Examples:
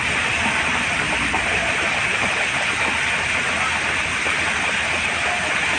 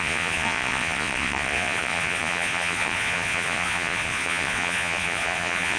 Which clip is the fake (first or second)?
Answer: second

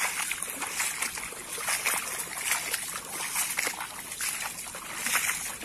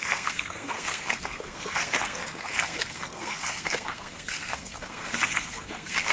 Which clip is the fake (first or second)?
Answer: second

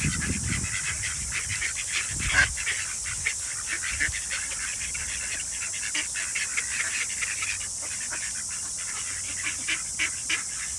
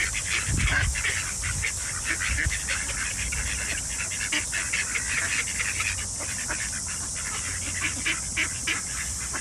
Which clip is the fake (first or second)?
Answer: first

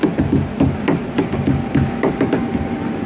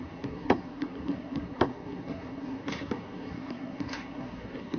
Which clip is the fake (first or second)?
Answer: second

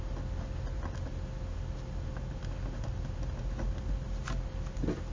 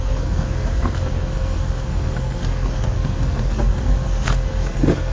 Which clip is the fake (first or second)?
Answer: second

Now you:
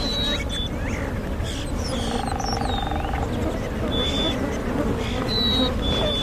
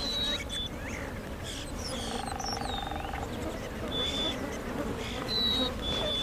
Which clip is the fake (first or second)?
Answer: second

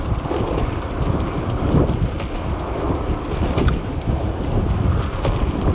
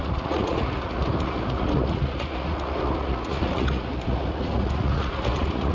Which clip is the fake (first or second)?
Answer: second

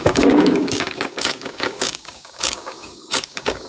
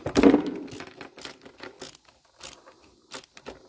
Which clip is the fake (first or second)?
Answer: first